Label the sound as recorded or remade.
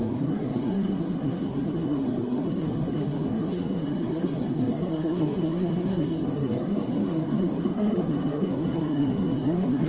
remade